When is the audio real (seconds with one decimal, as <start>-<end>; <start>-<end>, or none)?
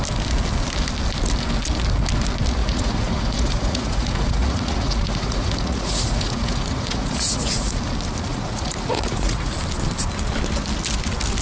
0.0-2.6; 7.8-8.3; 9.5-11.4